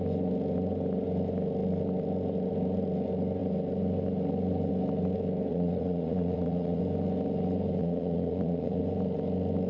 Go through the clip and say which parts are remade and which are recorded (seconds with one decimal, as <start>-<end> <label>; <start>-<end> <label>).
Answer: 0.0-5.5 recorded; 5.5-6.8 remade; 6.8-7.8 recorded; 7.8-8.8 remade; 8.8-9.7 recorded